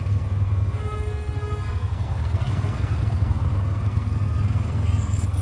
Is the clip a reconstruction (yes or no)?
yes